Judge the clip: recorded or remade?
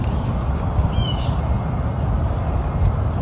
recorded